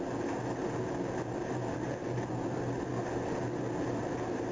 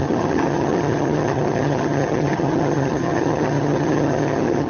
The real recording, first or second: first